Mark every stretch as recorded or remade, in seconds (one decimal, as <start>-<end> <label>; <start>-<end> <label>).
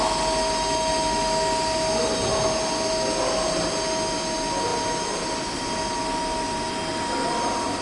0.0-7.8 recorded